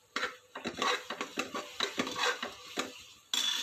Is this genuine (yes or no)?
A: yes